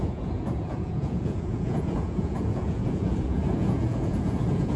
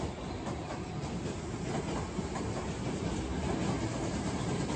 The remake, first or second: first